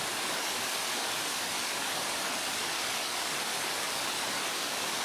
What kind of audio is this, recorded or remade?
remade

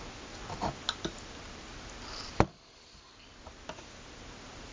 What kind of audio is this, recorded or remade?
recorded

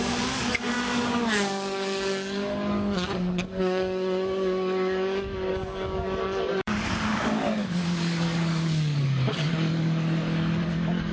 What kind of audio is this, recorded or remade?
remade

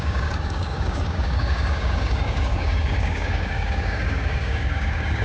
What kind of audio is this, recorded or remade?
remade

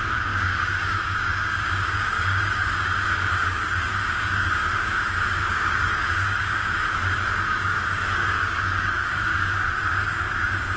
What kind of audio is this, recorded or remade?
remade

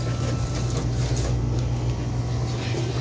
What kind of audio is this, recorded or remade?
recorded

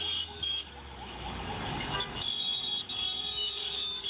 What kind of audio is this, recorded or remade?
remade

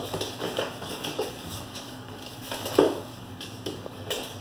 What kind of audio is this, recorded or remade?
remade